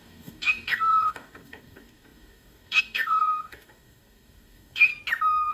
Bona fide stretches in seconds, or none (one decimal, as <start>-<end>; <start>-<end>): 4.9-5.5